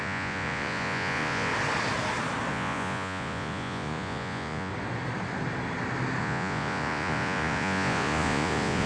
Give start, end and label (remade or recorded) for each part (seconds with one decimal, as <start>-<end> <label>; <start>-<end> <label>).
0.0-1.5 remade; 1.5-2.5 recorded; 2.5-4.7 remade; 4.7-6.2 recorded; 6.2-8.9 remade